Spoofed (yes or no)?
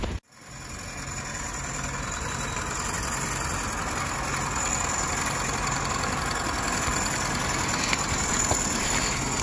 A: no